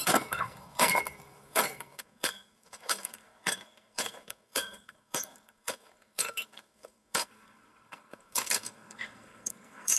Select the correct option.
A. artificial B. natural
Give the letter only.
A